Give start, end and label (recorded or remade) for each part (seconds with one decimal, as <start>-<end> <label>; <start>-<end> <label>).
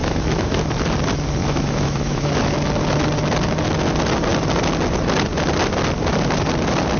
0.0-0.6 remade; 0.6-1.4 recorded; 1.4-2.3 remade; 2.3-7.0 recorded